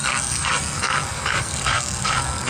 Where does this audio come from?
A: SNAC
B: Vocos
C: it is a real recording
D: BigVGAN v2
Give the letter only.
A